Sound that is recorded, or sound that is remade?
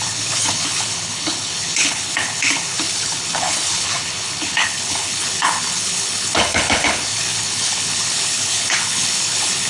remade